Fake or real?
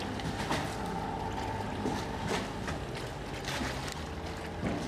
real